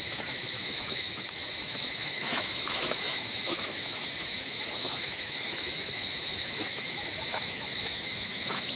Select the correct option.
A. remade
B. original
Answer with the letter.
A